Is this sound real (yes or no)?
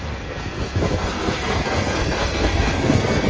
no